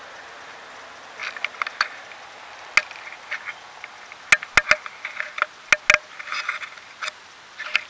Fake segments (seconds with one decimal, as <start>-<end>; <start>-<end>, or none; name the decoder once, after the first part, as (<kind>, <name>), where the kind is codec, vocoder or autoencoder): none